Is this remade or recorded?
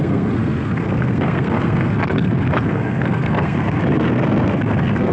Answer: remade